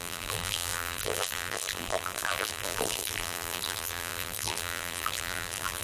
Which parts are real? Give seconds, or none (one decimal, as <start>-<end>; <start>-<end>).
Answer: none